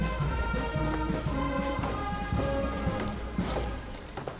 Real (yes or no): no